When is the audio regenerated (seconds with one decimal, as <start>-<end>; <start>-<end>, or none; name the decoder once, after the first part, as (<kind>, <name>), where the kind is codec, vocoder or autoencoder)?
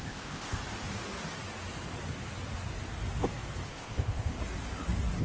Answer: 0.0-0.6 (codec, ZipCodec); 3.7-4.4